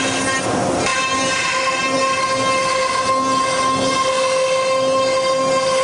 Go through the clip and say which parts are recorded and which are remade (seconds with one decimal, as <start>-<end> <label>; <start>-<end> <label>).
0.0-0.9 recorded; 0.9-2.2 remade; 2.2-5.8 recorded